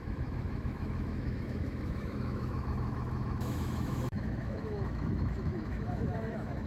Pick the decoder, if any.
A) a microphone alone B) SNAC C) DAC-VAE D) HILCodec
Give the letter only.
C